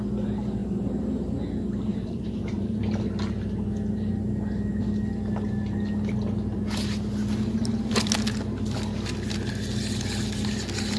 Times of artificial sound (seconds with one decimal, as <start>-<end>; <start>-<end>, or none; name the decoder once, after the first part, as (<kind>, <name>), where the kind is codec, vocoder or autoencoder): 0.6-1.4 (vocoder, BigVGAN v2); 1.9-2.9